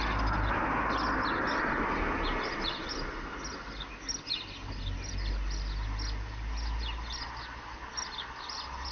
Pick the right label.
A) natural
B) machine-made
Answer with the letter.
A